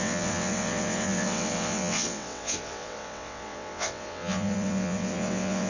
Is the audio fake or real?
fake